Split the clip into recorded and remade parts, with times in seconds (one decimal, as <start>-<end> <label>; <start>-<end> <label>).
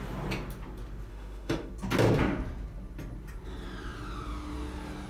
0.0-1.1 recorded; 1.1-1.7 remade; 1.7-5.1 recorded